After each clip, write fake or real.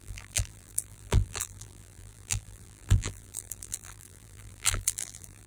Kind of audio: fake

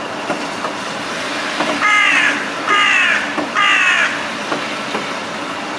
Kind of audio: real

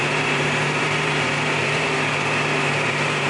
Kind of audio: fake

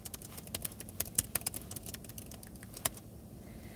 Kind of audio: real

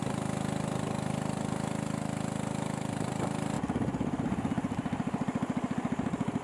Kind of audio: real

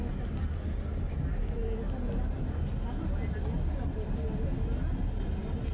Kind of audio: real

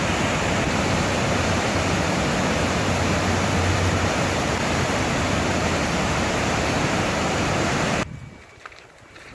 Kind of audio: fake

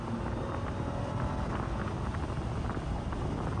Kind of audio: real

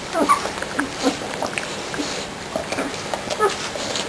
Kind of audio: fake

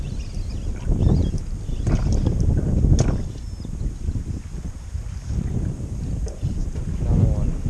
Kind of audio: real